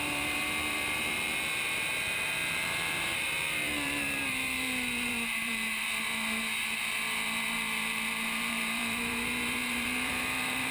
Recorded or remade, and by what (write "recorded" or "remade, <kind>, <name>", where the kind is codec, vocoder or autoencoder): remade, vocoder, BigVGAN v2